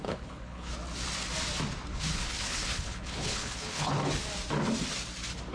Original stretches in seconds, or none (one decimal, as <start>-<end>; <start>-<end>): 0.7-2.0; 4.0-5.5